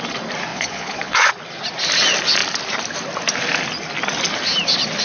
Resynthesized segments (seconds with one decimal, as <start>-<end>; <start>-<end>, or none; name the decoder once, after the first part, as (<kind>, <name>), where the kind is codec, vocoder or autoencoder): 0.5-1.3 (vocoder, Vocos)